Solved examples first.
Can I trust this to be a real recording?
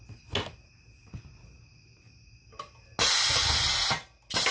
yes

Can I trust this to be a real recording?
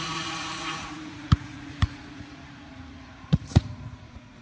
no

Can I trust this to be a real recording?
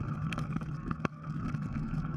no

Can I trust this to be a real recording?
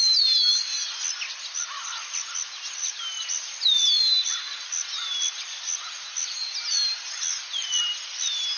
yes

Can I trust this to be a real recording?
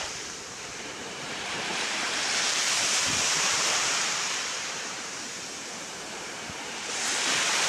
no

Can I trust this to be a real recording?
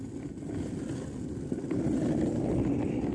yes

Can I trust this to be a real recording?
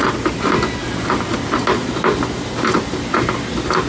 yes